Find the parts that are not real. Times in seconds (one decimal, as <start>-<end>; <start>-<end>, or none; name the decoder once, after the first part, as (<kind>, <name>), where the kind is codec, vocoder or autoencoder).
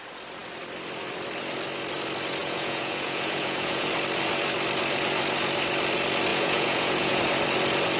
2.4-3.9 (vocoder, Vocos); 6.3-7.2